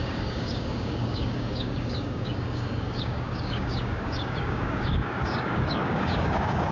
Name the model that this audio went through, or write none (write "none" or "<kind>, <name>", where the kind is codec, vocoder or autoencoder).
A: codec, DAC